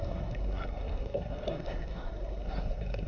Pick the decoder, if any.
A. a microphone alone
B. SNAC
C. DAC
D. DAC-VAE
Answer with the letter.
B